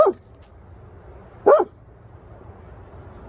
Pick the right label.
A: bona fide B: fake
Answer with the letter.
A